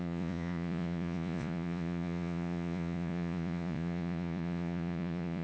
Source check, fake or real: fake